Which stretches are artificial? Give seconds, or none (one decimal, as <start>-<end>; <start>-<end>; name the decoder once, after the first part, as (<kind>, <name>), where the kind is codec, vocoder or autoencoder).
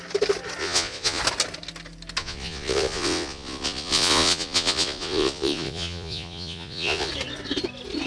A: 0.6-1.2 (vocoder, Vocos); 2.2-7.1